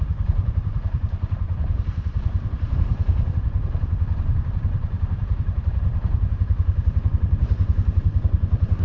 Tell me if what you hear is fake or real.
fake